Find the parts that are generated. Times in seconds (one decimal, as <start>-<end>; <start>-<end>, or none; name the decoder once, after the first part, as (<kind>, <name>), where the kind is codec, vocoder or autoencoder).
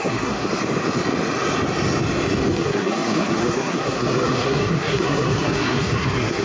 0.0-0.5 (codec, SNAC); 2.5-6.4